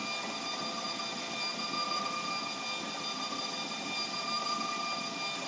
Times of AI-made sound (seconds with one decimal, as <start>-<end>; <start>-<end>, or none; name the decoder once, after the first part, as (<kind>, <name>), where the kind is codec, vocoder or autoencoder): none